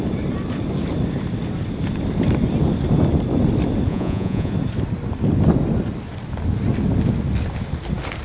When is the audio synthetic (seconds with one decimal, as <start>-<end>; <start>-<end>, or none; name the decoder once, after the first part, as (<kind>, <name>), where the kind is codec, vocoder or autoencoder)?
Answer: 3.9-4.5 (vocoder, Vocos)

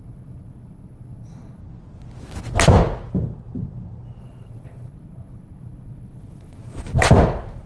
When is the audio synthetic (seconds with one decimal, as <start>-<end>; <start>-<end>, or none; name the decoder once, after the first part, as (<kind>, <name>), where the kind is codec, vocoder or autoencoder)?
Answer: 0.0-1.6 (vocoder, Vocos); 4.2-6.9

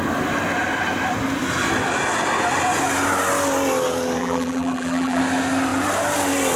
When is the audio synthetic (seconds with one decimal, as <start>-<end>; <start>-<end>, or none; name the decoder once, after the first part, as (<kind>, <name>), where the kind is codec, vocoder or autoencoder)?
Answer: 4.2-5.2 (vocoder, BigVGAN v2)

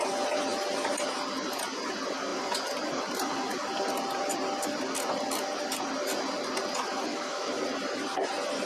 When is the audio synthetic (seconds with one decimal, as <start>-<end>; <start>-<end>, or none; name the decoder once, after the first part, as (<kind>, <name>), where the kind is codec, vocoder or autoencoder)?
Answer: 7.1-7.6 (autoencoder, DAC-VAE)

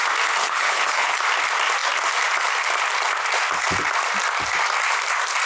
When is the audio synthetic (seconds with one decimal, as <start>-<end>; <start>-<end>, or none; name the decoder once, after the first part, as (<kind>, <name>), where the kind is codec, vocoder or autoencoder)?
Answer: 0.4-1.1 (codec, HILCodec)